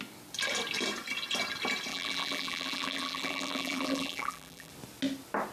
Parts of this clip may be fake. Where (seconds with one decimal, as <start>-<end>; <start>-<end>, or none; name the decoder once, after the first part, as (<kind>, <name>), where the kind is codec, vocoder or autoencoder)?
1.9-4.7 (vocoder, BigVGAN v2)